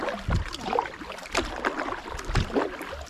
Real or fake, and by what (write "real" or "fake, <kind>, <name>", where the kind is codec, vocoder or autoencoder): real